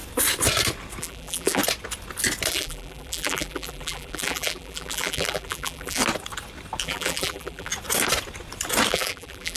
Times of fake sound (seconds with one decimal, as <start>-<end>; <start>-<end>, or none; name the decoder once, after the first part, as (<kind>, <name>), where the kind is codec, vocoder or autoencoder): 1.0-1.6 (vocoder, BigVGAN v2); 2.5-6.0; 6.8-7.7; 8.9-9.6